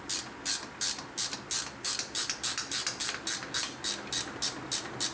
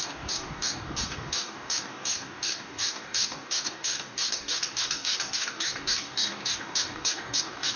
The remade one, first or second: second